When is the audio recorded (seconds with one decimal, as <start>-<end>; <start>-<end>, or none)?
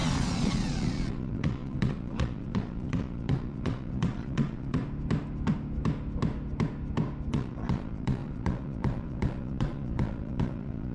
4.8-7.3